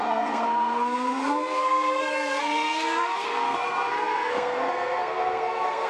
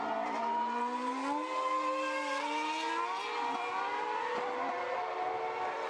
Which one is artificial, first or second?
first